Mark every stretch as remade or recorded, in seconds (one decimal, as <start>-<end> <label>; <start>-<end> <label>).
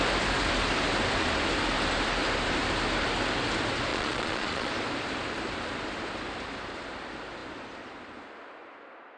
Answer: 0.0-3.9 recorded; 3.9-4.7 remade; 4.7-9.2 recorded